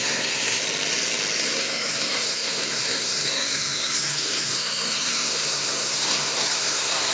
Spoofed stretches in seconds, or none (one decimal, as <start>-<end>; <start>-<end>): 0.0-0.6; 1.4-7.1